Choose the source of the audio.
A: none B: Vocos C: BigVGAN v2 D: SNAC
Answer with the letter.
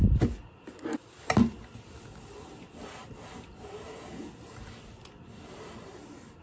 A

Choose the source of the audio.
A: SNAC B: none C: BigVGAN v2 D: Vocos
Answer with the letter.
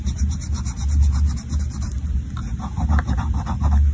B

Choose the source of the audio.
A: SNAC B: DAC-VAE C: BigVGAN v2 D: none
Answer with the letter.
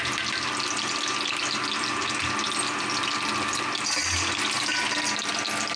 D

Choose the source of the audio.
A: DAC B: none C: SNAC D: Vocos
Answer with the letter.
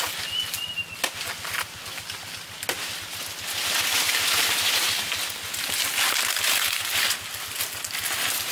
B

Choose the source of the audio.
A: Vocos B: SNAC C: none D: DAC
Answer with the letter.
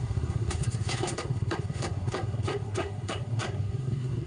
B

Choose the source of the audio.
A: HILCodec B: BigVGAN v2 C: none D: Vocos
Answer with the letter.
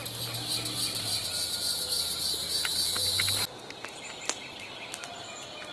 C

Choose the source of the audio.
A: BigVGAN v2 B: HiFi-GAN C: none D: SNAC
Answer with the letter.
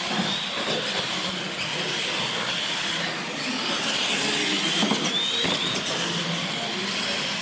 C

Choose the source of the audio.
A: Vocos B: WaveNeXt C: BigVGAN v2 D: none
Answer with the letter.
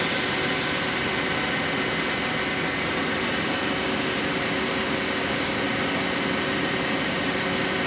D